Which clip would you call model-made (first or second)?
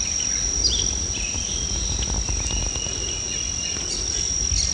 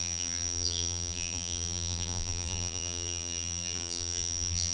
second